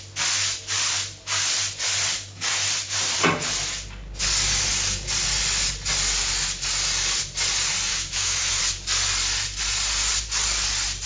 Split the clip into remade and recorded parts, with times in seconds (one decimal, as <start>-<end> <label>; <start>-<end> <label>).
0.0-7.9 recorded; 7.9-8.6 remade; 8.6-11.1 recorded